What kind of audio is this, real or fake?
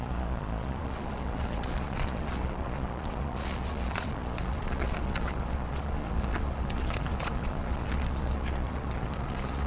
fake